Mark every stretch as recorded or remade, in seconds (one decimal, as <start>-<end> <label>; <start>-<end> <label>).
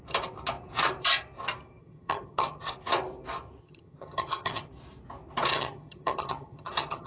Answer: 0.0-1.8 recorded; 1.8-2.7 remade; 2.7-3.6 recorded; 3.6-4.7 remade; 4.7-5.5 recorded; 5.5-7.1 remade